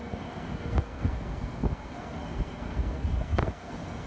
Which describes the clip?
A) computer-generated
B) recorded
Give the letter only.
A